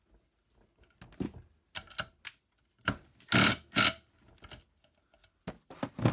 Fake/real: real